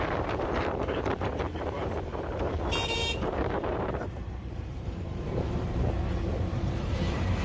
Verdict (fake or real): fake